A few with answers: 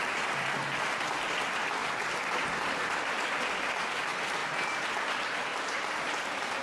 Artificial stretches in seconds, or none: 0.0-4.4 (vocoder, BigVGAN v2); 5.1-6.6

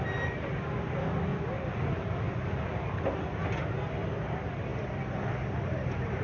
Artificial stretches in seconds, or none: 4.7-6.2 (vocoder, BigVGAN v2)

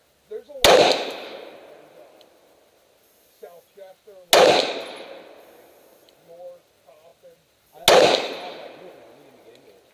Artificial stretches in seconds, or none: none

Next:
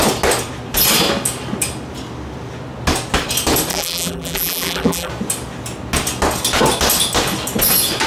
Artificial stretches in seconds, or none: 3.7-5.1 (vocoder, BigVGAN v2)

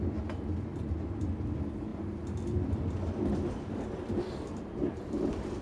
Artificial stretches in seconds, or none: 0.7-1.2 (vocoder, BigVGAN v2); 1.9-5.6

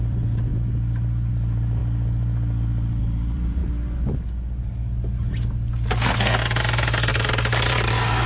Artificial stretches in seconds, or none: 0.0-0.5 (vocoder, BigVGAN v2); 1.3-1.8; 3.0-3.6; 7.1-8.3